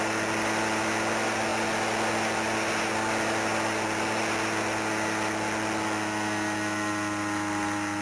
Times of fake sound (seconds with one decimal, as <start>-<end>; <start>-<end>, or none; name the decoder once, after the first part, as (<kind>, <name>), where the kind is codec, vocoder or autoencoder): none